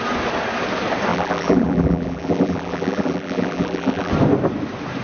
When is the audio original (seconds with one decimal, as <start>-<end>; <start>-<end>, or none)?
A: 0.0-1.1; 4.1-5.0